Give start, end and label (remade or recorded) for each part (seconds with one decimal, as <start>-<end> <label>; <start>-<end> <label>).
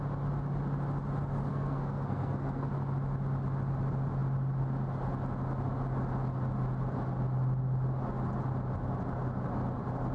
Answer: 0.0-1.5 recorded; 1.5-2.7 remade; 2.7-10.1 recorded